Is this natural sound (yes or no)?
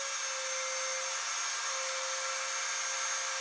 yes